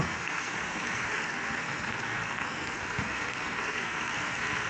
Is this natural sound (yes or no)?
no